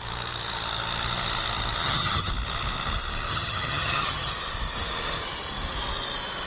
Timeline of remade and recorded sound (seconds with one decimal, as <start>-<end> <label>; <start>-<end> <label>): 0.0-1.8 recorded; 1.8-2.3 remade; 2.3-3.3 recorded; 3.3-4.3 remade; 4.3-6.5 recorded